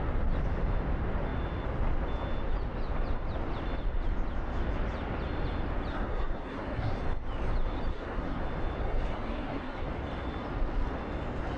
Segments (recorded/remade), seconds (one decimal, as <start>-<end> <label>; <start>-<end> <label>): 0.0-5.9 recorded; 5.9-6.9 remade; 6.9-7.9 recorded; 7.9-8.4 remade; 8.4-8.8 recorded; 8.8-9.9 remade; 9.9-11.6 recorded